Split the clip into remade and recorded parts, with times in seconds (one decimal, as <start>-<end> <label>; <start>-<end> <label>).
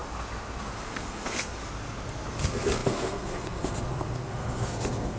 0.0-0.6 recorded; 0.6-1.7 remade; 1.7-2.3 recorded; 2.3-5.2 remade